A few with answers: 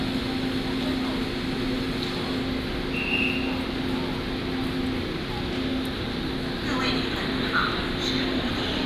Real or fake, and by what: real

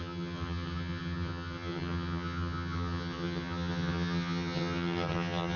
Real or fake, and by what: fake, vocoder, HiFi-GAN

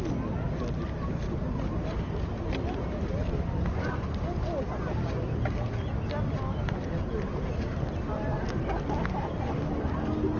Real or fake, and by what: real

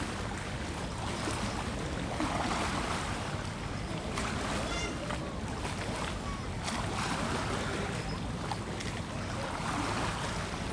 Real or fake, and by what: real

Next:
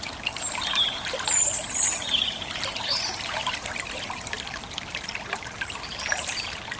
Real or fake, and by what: real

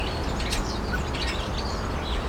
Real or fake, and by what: real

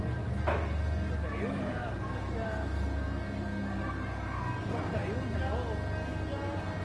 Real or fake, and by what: fake, vocoder, BigVGAN v2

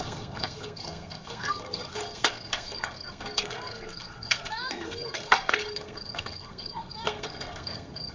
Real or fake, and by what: fake, codec, SNAC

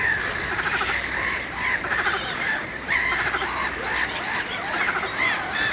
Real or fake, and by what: fake, vocoder, BigVGAN v2